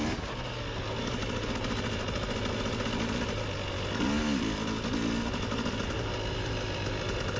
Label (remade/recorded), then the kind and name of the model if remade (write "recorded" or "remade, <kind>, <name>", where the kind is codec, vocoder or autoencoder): recorded